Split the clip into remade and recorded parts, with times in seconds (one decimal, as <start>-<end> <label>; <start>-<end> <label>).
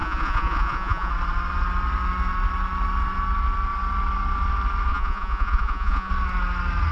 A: 0.0-1.1 remade; 1.1-4.9 recorded; 4.9-6.1 remade; 6.1-6.9 recorded